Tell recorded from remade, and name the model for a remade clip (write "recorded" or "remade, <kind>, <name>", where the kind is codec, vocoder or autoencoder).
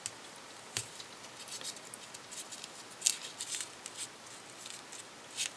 recorded